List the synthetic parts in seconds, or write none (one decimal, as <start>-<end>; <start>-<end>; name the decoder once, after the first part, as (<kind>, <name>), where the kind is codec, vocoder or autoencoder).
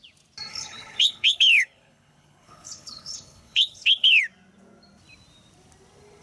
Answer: 0.5-4.2 (codec, HILCodec)